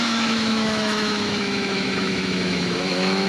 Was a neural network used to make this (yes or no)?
yes